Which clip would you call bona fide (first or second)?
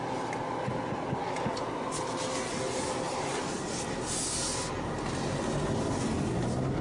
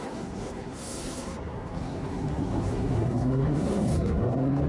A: first